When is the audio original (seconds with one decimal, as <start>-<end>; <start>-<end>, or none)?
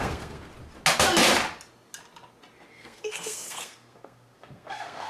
0.5-2.7